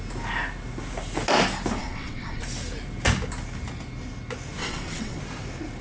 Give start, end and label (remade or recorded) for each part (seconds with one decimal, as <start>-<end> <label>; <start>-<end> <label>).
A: 0.0-1.8 recorded; 1.8-2.4 remade; 2.4-4.6 recorded; 4.6-5.2 remade; 5.2-5.8 recorded